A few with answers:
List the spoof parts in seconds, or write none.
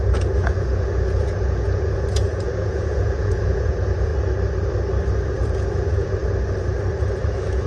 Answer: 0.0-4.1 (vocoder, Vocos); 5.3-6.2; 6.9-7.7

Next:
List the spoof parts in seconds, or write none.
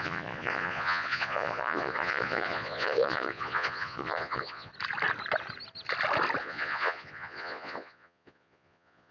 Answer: 0.0-4.7 (vocoder, Vocos); 6.4-9.1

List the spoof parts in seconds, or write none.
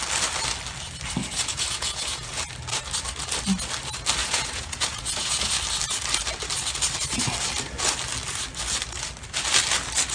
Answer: 1.2-2.4 (vocoder, Vocos); 4.2-5.5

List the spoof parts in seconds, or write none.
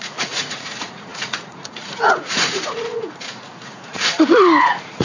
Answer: 0.0-5.0 (vocoder, Vocos)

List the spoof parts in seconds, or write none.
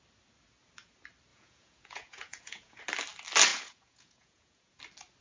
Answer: 1.3-2.8 (vocoder, Vocos); 3.5-4.8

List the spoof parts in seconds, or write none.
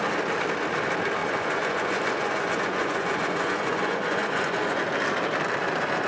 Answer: 1.2-4.8 (vocoder, Vocos)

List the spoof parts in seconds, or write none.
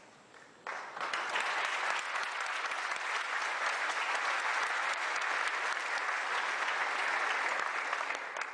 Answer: 0.7-5.3 (vocoder, Vocos); 6.0-7.2